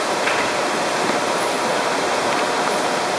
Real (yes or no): no